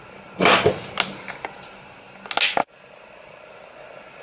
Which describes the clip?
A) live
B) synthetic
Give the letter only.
A